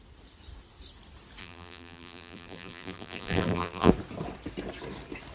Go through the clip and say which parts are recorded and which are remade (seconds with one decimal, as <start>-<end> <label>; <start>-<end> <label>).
0.0-1.4 recorded; 1.4-3.9 remade; 3.9-5.3 recorded

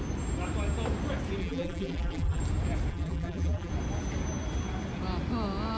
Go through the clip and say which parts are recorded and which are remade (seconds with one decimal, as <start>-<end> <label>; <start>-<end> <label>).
0.0-1.4 recorded; 1.4-2.4 remade; 2.4-2.9 recorded; 2.9-3.7 remade; 3.7-5.8 recorded

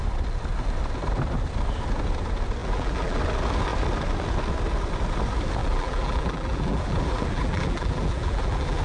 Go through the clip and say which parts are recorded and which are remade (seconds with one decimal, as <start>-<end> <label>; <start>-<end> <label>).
0.0-2.6 recorded; 2.6-3.2 remade; 3.2-5.6 recorded; 5.6-8.8 remade

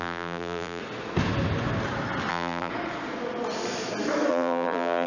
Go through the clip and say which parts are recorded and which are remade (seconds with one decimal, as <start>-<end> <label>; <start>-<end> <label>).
0.0-0.8 remade; 0.8-2.3 recorded; 2.3-2.7 remade; 2.7-4.3 recorded; 4.3-5.1 remade

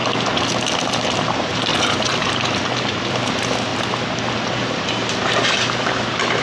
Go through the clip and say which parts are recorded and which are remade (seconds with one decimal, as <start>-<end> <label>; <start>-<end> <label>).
0.0-0.8 recorded; 0.8-1.7 remade; 1.7-2.6 recorded; 2.6-3.7 remade; 3.7-4.3 recorded; 4.3-6.4 remade

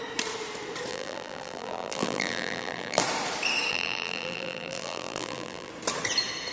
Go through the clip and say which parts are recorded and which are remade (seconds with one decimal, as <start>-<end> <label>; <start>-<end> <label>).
0.0-0.9 recorded; 0.9-3.0 remade; 3.0-3.7 recorded; 3.7-5.7 remade; 5.7-6.5 recorded

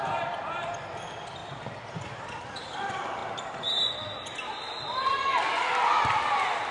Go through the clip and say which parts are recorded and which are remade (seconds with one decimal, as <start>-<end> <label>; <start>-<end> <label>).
0.0-3.2 remade; 3.2-4.4 recorded; 4.4-6.7 remade

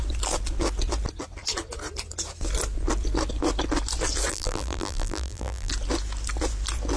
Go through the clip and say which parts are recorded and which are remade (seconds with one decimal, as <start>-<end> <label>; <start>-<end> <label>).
0.0-4.3 recorded; 4.3-5.7 remade; 5.7-7.0 recorded